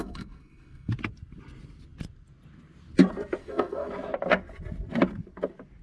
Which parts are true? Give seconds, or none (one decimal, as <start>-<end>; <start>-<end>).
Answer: 0.9-3.4; 3.9-5.8

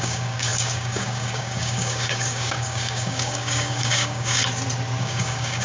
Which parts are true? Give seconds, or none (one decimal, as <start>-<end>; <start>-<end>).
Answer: 4.4-5.0

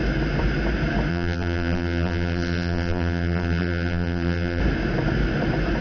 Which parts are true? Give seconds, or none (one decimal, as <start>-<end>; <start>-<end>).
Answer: 0.0-1.1; 4.6-5.8